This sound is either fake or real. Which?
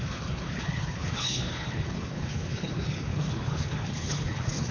fake